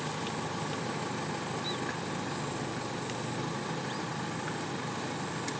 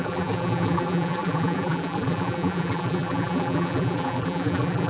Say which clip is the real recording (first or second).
first